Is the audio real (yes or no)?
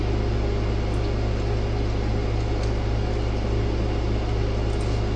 yes